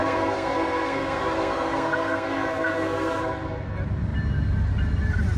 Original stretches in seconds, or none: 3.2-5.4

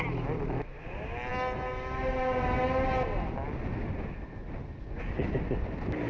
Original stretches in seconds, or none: 0.0-6.1

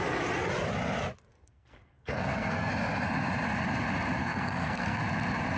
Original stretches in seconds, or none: 0.0-1.3; 2.7-4.2; 5.0-5.6

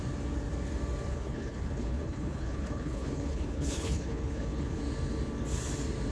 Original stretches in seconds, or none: 0.0-1.1; 4.8-6.1

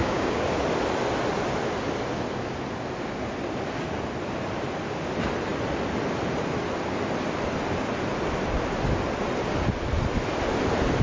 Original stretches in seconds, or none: 0.5-11.0

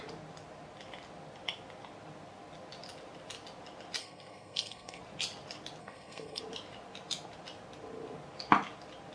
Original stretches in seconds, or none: 0.0-4.0; 5.0-5.8; 6.4-9.1